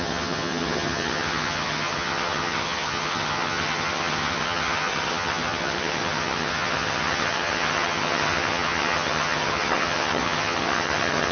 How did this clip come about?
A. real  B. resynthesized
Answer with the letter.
B